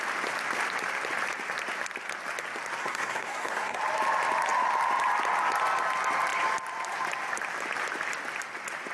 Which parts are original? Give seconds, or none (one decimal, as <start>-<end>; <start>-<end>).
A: 0.0-2.8; 3.8-8.9